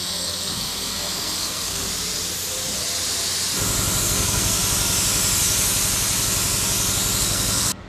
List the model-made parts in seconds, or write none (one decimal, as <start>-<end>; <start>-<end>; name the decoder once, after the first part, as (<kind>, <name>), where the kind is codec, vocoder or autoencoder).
0.0-1.9 (codec, SNAC); 4.0-4.6; 7.2-7.9